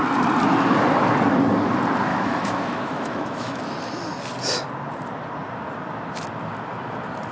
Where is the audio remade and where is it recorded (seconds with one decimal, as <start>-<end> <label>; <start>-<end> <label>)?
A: 0.0-2.1 recorded; 2.1-3.6 remade; 3.6-7.3 recorded